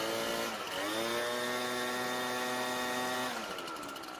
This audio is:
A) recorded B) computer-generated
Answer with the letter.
A